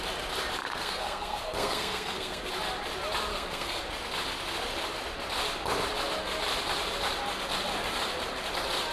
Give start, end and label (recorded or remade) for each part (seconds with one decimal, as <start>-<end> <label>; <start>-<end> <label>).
0.0-0.6 recorded; 0.6-2.5 remade; 2.5-3.3 recorded; 3.3-3.8 remade; 3.8-8.9 recorded